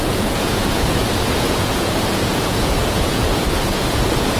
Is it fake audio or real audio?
fake